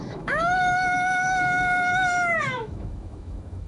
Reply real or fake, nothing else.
fake